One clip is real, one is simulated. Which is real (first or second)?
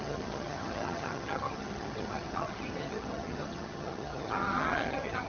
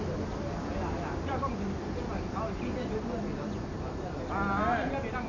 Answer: second